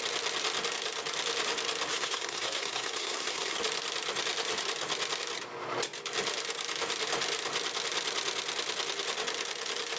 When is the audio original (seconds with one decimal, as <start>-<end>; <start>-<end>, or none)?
0.0-1.9; 3.6-10.0